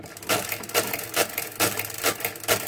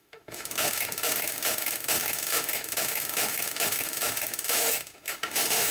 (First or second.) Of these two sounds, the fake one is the second